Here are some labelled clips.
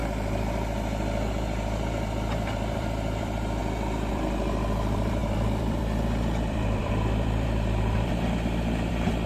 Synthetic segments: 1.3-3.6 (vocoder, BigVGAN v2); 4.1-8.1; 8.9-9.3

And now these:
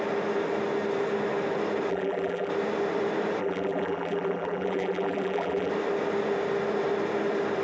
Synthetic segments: 1.9-2.5 (vocoder, BigVGAN v2); 3.4-5.7

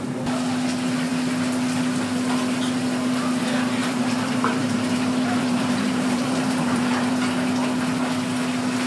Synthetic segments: 3.8-7.1 (vocoder, BigVGAN v2)

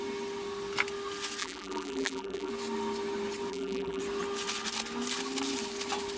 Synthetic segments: 1.4-2.5 (vocoder, BigVGAN v2); 3.5-4.0

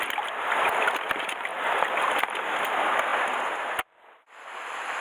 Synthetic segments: 1.5-2.0 (vocoder, BigVGAN v2)

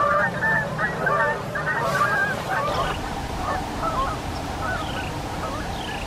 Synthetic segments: 2.2-3.4 (vocoder, BigVGAN v2)

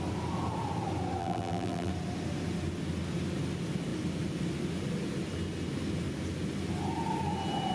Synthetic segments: 1.2-1.9 (vocoder, BigVGAN v2)

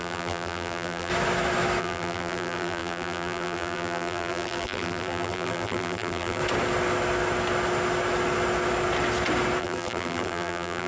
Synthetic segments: 0.0-1.1 (vocoder, BigVGAN v2); 1.8-6.4; 9.6-10.9